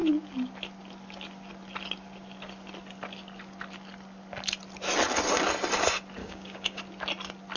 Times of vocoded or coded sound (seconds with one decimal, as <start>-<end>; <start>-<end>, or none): 6.2-6.8